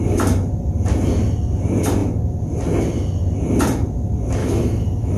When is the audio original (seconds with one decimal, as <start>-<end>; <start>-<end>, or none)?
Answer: 0.0-4.4